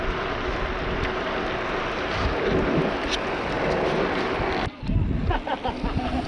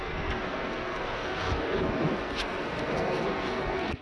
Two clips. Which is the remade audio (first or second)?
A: second